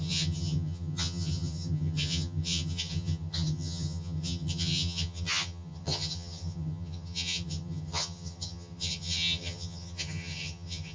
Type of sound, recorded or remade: remade